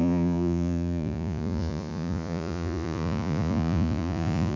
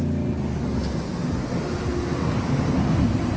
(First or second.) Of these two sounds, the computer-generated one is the first